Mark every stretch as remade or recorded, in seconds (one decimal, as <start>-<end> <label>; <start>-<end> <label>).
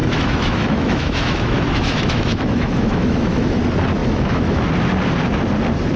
0.0-3.6 remade; 3.6-4.0 recorded; 4.0-4.7 remade; 4.7-6.0 recorded